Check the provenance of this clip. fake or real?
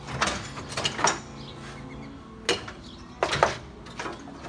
real